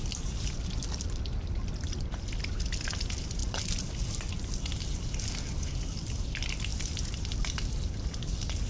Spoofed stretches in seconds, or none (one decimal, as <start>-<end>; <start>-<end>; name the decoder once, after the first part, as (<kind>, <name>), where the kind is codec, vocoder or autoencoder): none